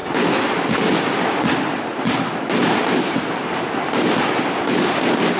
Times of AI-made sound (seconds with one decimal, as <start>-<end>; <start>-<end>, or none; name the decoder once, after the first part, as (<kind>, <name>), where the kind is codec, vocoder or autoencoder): none